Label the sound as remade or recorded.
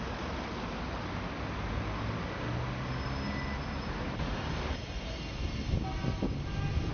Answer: recorded